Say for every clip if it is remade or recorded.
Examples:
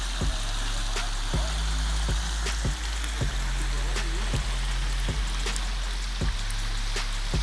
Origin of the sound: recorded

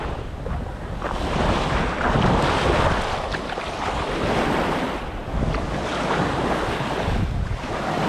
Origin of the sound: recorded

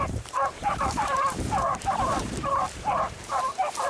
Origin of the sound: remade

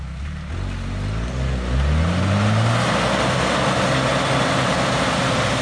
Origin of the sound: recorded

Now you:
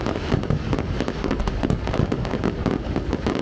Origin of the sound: remade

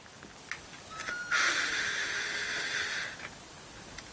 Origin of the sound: recorded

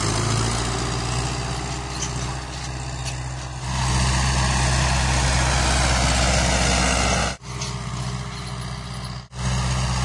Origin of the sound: recorded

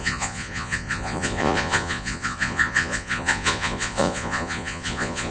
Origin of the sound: remade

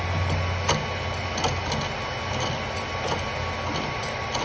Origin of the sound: recorded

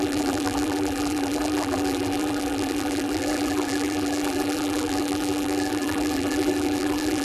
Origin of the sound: remade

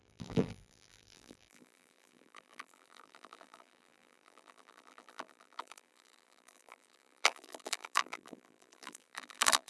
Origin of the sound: remade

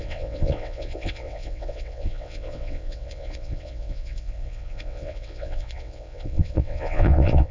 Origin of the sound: remade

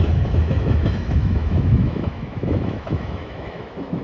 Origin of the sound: remade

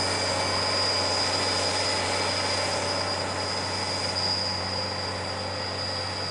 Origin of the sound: recorded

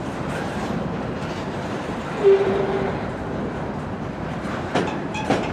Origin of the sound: remade